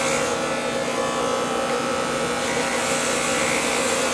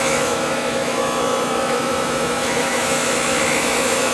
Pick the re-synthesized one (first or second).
second